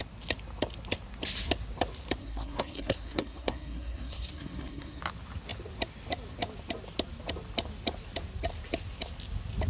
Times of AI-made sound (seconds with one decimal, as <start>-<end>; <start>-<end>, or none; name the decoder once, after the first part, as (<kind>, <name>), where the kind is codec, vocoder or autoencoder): 2.2-5.0 (codec, SNAC)